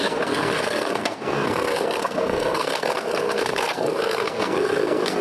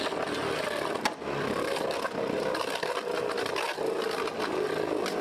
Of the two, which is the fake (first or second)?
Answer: first